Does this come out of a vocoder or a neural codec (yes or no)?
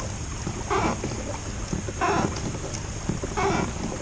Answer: no